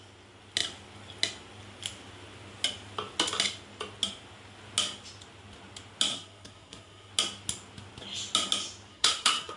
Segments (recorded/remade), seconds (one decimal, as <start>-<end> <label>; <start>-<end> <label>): 0.0-6.1 recorded; 6.1-7.1 remade; 7.1-8.9 recorded; 8.9-9.6 remade